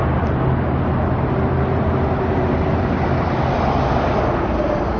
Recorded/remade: recorded